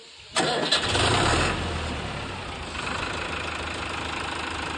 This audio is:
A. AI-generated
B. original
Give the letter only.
B